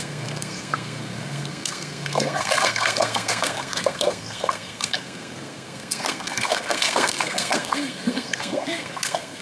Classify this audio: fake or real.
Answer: fake